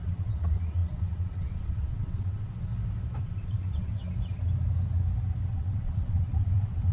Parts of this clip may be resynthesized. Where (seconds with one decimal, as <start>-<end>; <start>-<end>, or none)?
0.0-2.7; 3.2-4.0; 5.5-6.9